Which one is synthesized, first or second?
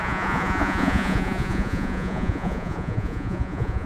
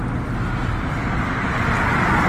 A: first